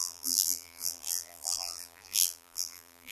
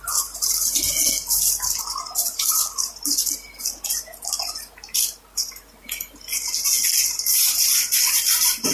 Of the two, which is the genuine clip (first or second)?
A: second